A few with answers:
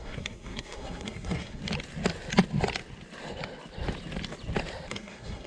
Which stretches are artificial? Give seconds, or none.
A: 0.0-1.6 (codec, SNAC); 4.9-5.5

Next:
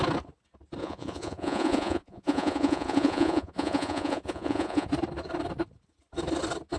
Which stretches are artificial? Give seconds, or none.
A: 0.8-4.9 (vocoder, Vocos)

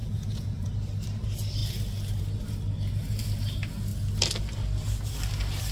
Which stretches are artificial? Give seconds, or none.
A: 0.0-0.7 (vocoder, Vocos)

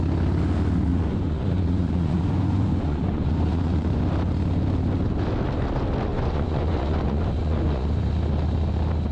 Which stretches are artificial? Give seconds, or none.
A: 0.9-4.0 (vocoder, Vocos); 6.1-7.9

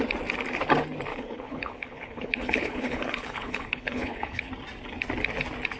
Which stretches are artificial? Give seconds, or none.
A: 1.1-4.5 (codec, HILCodec)

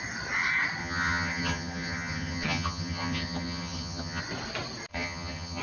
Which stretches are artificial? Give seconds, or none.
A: 0.8-4.2 (vocoder, HiFi-GAN); 4.9-5.6

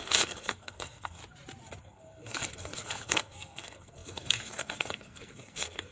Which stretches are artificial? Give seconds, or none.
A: 0.0-1.2 (codec, SNAC); 1.8-5.9